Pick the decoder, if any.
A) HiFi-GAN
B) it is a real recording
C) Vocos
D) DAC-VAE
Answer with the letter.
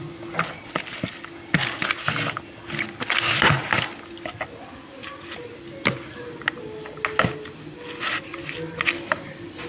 B